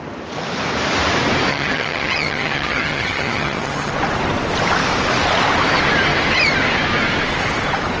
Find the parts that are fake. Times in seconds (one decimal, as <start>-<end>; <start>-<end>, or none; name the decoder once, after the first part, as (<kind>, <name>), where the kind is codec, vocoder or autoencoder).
1.5-3.9 (vocoder, HiFi-GAN)